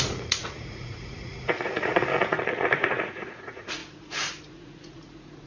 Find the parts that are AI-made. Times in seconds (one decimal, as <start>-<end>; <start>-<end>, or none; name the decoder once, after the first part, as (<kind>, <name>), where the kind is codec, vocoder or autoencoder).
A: 0.0-3.8 (vocoder, Vocos); 4.5-5.5